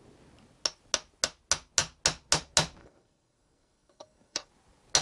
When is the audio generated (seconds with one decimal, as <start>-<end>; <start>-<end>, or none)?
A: 2.8-4.5